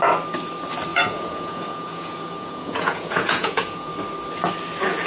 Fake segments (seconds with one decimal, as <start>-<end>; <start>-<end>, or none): 0.9-3.9